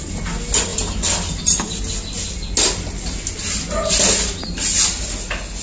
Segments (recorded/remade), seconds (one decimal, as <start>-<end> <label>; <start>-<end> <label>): 0.0-5.6 recorded

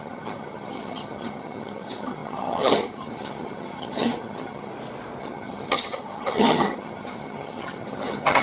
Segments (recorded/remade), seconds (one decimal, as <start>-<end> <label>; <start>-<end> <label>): 0.0-4.7 remade; 4.7-5.2 recorded; 5.2-8.4 remade